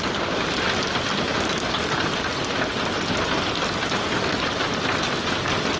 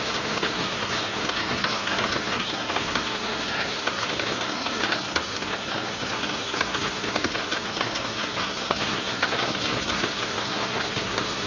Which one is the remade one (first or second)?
second